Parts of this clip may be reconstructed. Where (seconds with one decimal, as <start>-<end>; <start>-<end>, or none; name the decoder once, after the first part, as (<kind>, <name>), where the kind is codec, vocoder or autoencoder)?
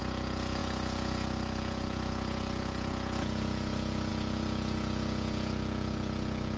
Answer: 0.0-6.6 (vocoder, Vocos)